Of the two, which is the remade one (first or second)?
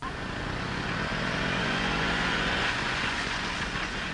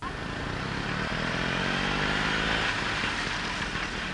first